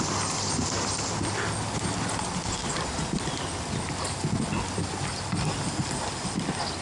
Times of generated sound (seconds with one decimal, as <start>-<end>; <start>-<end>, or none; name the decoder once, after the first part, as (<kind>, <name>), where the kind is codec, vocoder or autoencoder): none